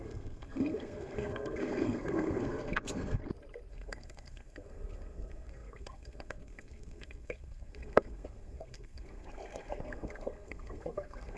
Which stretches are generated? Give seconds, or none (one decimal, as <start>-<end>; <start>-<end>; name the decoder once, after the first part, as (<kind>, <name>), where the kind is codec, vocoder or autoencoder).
0.0-3.2 (codec, SNAC); 3.7-11.4